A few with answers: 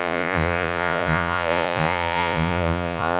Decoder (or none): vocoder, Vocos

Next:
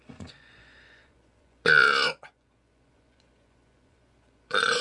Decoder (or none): vocoder, Vocos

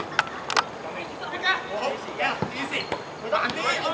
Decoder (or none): none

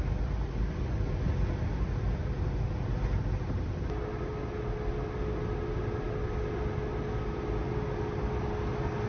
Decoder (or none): none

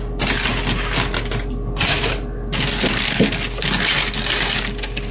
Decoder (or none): none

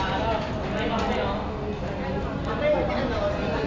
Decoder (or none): none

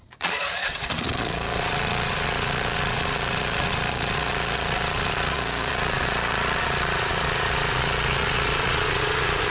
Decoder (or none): vocoder, Vocos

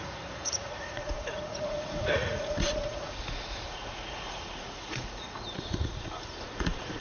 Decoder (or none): vocoder, Vocos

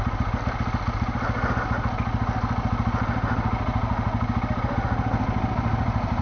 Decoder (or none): none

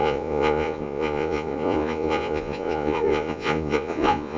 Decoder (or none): vocoder, Vocos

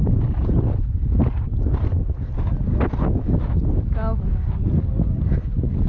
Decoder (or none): none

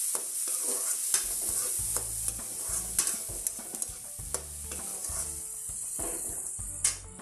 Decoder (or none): none